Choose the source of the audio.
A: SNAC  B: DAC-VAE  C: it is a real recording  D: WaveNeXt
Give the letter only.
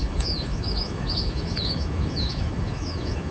B